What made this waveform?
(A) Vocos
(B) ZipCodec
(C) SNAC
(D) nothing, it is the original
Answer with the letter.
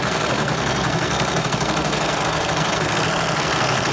C